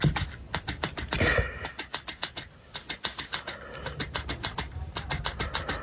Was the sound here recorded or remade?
recorded